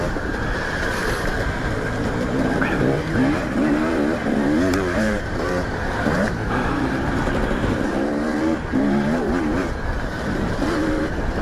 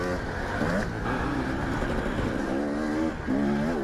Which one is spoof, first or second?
first